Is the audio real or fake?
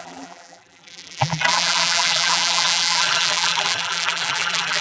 fake